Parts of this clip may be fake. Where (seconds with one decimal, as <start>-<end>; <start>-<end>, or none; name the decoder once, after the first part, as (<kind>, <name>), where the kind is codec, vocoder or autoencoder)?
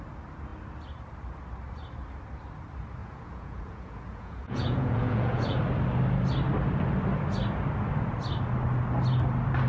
3.0-5.6 (vocoder, Vocos)